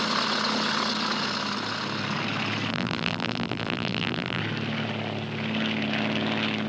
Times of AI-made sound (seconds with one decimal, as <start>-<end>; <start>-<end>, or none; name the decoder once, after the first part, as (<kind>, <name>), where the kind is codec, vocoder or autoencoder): 2.7-4.4 (vocoder, BigVGAN v2)